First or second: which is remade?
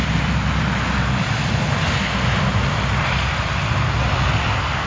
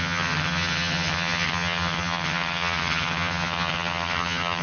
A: second